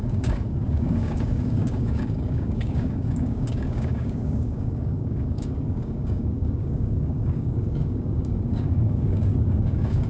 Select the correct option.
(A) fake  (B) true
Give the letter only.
A